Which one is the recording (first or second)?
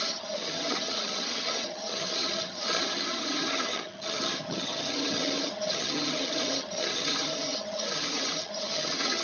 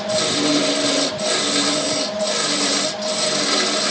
second